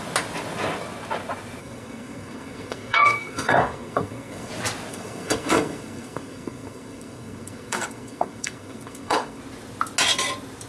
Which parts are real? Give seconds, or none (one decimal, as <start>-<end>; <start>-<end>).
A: 0.0-1.6; 4.5-4.9; 9.4-10.7